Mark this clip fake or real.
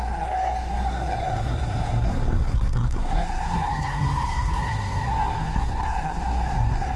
fake